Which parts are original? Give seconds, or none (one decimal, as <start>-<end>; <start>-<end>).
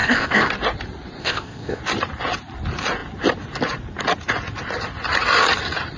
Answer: 0.5-1.2; 1.8-6.0